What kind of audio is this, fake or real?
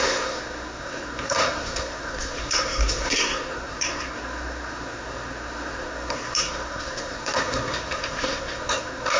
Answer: fake